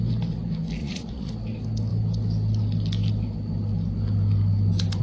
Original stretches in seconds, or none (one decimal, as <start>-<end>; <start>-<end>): 0.0-0.8; 1.3-5.0